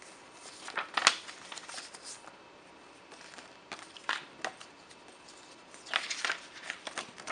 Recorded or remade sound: recorded